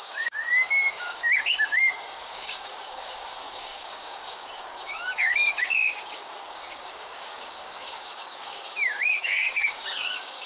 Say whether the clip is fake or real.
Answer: fake